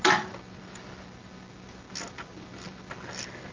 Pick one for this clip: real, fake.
real